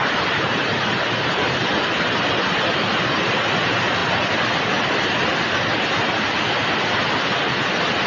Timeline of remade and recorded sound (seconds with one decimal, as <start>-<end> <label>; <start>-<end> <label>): 0.0-8.1 recorded